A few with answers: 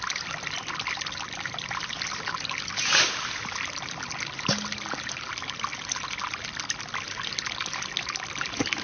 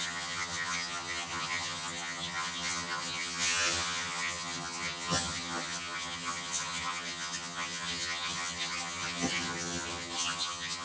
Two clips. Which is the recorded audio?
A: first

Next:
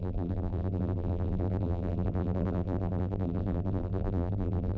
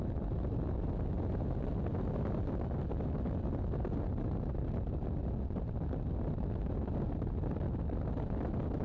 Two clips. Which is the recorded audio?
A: second